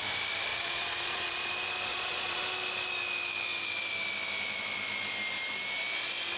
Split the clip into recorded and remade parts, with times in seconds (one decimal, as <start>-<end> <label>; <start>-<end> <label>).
0.0-0.5 recorded; 0.5-1.5 remade; 1.5-1.9 recorded; 1.9-2.4 remade; 2.4-6.4 recorded